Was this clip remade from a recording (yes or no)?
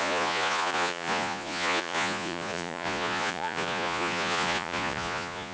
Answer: yes